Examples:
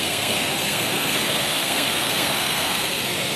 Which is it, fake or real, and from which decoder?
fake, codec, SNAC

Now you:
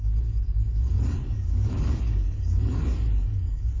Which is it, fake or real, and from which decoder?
fake, codec, DAC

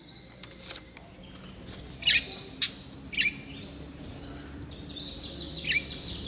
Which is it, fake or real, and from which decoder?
real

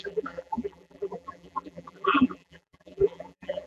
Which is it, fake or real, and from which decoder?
fake, vocoder, BigVGAN v2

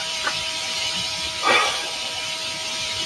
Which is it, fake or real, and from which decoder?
fake, vocoder, BigVGAN v2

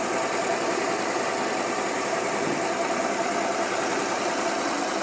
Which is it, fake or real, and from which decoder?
real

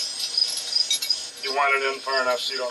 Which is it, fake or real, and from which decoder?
real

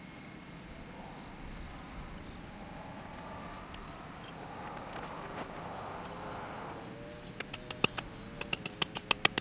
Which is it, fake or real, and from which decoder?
real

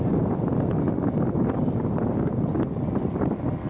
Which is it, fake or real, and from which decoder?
real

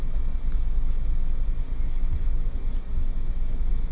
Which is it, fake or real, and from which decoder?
real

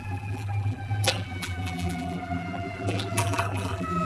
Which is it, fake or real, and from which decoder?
fake, vocoder, BigVGAN v2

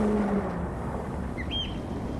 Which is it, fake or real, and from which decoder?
real